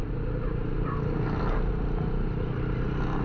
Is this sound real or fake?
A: real